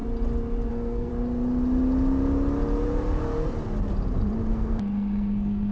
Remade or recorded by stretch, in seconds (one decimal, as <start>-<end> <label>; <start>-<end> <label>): 0.0-0.7 recorded; 0.7-1.1 remade; 1.1-4.5 recorded; 4.5-5.7 remade